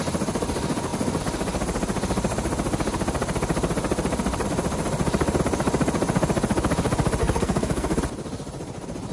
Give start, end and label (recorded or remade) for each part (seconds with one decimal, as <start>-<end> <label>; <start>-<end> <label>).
0.0-7.2 recorded; 7.2-8.0 remade; 8.0-9.1 recorded